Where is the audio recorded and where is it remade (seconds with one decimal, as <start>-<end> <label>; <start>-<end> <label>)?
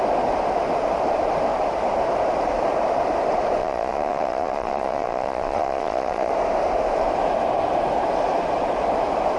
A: 0.0-3.6 recorded; 3.6-6.3 remade; 6.3-9.4 recorded